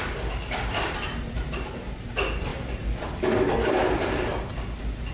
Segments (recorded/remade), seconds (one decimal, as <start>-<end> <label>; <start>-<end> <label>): 0.0-2.5 recorded; 2.5-4.5 remade; 4.5-5.1 recorded